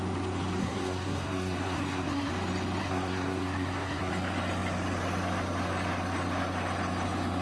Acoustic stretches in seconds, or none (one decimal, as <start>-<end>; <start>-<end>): 0.0-0.6; 2.3-2.8; 4.1-7.4